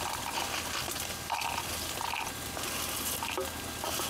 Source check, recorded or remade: recorded